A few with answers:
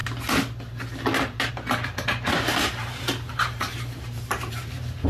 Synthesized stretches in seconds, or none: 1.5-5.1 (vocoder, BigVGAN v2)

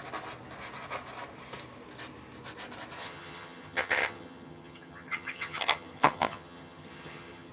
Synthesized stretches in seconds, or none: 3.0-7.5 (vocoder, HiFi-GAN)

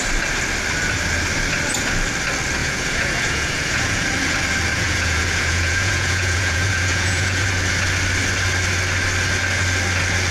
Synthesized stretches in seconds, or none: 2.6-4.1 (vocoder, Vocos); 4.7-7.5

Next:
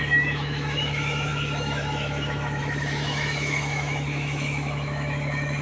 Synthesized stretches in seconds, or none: 0.0-5.6 (autoencoder, DAC-VAE)